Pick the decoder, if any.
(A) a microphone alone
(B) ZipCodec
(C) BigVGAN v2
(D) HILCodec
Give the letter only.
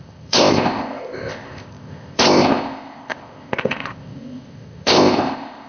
B